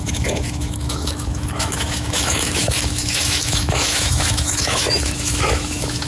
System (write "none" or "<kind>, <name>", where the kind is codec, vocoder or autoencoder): autoencoder, DAC-VAE